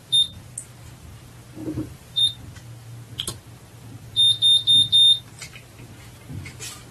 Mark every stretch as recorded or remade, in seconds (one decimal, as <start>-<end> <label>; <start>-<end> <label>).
0.0-1.6 recorded; 1.6-2.3 remade; 2.3-6.9 recorded